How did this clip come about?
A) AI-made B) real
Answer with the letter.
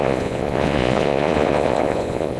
A